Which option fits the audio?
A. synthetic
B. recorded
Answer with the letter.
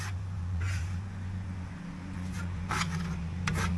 A